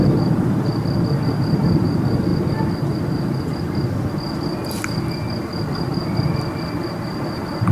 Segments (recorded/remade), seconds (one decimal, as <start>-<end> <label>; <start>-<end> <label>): 0.0-0.7 remade; 0.7-1.3 recorded; 1.3-2.3 remade; 2.3-5.6 recorded; 5.6-6.0 remade; 6.0-7.0 recorded; 7.0-7.7 remade